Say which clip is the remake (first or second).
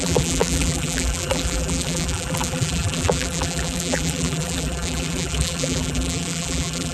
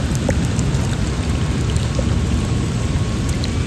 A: first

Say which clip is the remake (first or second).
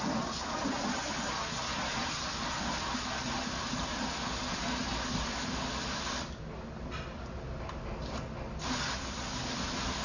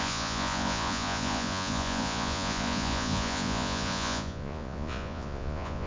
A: second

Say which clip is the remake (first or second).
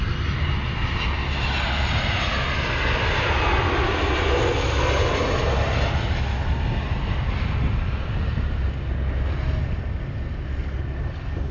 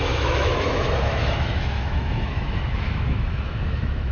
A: second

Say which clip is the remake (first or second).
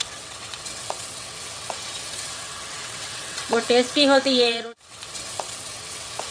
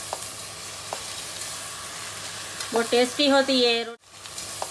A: first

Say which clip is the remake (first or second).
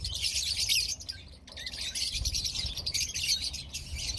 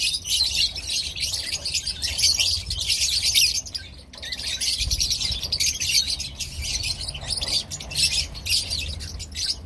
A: first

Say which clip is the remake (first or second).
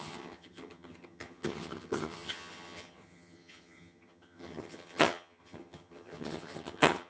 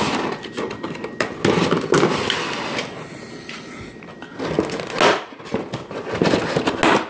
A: first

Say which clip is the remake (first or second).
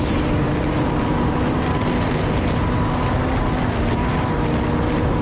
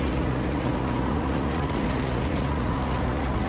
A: second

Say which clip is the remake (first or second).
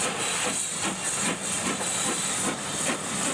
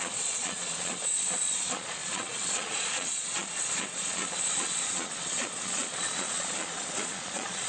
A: second